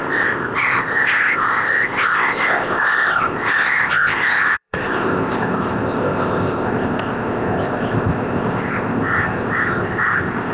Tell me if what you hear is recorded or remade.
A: remade